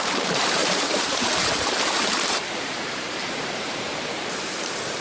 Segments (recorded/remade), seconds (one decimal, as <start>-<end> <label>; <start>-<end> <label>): 0.0-5.0 remade